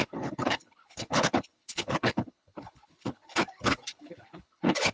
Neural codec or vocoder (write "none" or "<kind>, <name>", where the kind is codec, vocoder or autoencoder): codec, HILCodec